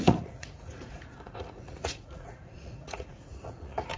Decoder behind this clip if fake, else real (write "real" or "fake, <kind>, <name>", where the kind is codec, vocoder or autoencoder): fake, vocoder, Vocos